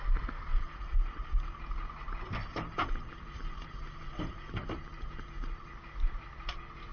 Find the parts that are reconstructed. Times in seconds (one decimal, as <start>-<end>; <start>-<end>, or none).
0.5-1.6; 2.4-5.7